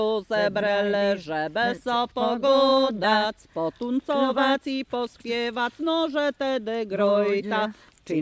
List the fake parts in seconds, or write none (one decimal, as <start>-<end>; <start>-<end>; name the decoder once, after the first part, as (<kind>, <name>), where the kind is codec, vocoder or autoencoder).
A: none